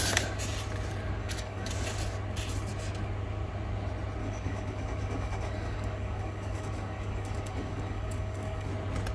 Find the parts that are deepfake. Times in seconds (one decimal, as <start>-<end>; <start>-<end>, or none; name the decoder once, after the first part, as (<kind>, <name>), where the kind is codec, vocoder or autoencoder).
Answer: 1.2-1.7 (codec, DAC); 4.2-8.7